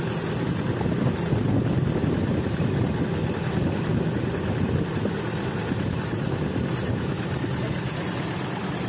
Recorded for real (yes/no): yes